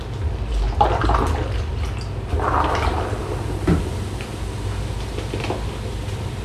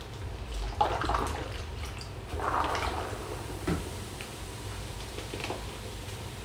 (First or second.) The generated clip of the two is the second